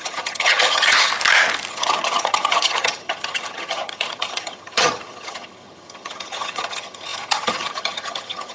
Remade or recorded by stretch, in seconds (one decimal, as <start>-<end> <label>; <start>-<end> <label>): 0.0-1.1 remade; 1.1-1.7 recorded; 1.7-8.5 remade